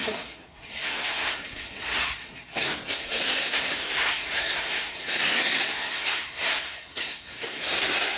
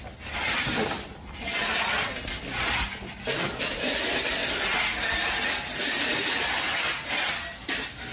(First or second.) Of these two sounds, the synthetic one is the first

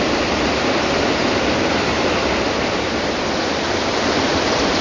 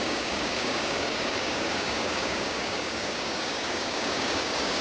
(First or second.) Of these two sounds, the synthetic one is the second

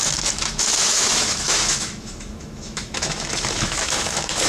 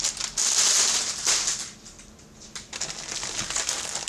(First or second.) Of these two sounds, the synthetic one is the first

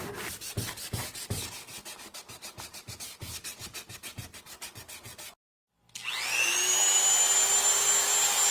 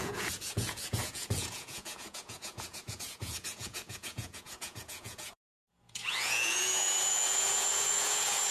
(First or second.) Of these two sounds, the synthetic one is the second